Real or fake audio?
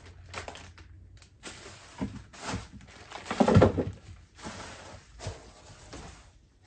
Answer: real